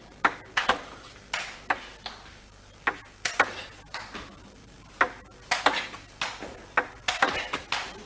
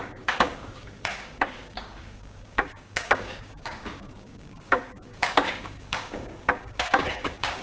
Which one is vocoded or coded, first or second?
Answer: second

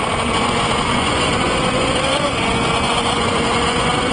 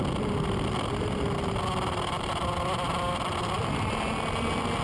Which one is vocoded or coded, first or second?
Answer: first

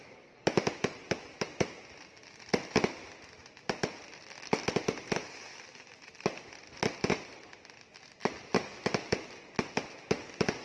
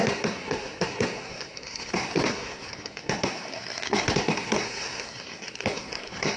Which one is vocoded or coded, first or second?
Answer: second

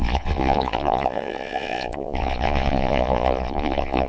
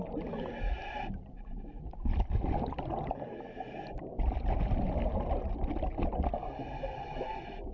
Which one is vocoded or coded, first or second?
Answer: first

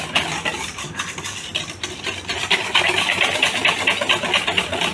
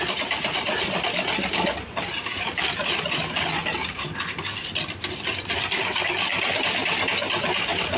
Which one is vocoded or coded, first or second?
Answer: second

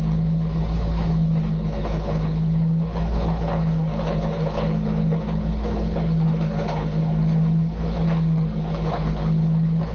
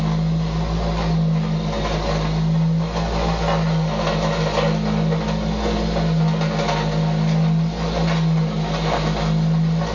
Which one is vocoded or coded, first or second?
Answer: first